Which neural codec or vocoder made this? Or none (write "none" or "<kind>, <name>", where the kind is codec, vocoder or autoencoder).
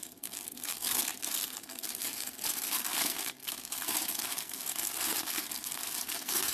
codec, SNAC